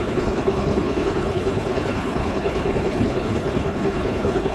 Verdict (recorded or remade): remade